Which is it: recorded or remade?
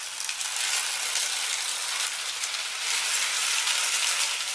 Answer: recorded